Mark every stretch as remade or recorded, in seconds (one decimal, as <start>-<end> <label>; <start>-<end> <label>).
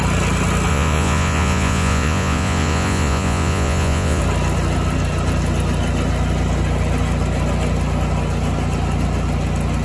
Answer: 0.0-0.7 recorded; 0.7-4.2 remade; 4.2-9.8 recorded